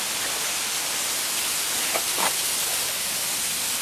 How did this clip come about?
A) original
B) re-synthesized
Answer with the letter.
A